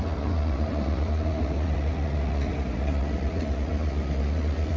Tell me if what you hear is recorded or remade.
remade